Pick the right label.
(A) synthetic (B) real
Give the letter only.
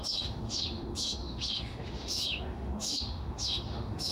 A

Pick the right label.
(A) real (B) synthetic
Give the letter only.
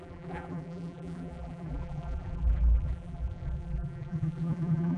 B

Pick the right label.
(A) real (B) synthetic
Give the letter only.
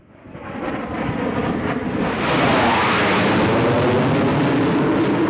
A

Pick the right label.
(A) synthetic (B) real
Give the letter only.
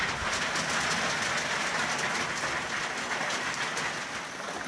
B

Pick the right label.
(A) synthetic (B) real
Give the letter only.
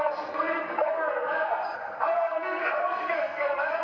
A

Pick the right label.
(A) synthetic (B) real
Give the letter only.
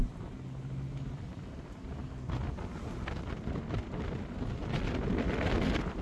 B